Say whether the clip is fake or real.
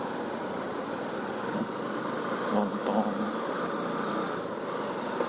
real